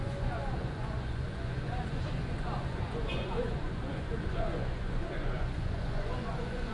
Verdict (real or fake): fake